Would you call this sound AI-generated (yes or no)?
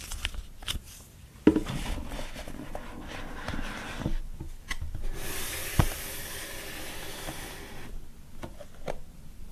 no